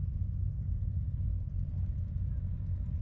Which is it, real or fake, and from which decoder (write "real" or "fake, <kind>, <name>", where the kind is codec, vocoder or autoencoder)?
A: real